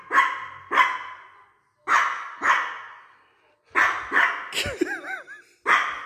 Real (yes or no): yes